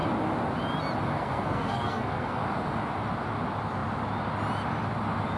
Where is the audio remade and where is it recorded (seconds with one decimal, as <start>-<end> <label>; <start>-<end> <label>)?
0.0-1.1 recorded; 1.1-2.4 remade; 2.4-5.4 recorded